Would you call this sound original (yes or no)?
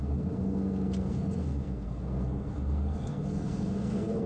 no